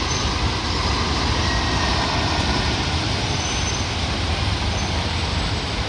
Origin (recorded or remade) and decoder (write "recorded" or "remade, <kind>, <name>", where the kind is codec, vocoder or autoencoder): recorded